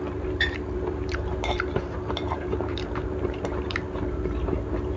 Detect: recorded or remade remade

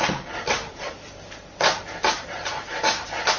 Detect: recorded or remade remade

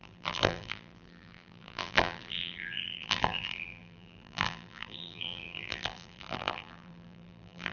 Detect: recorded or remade remade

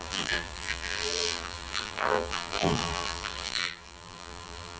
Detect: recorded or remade remade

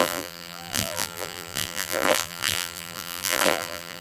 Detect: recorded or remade remade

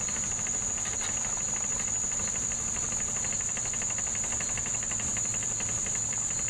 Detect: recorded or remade recorded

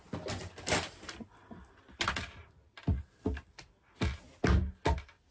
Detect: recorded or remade recorded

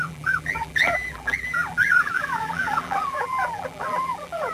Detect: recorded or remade remade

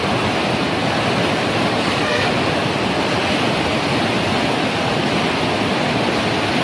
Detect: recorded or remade remade